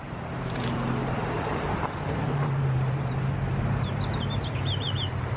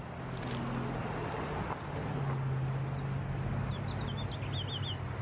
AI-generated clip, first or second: first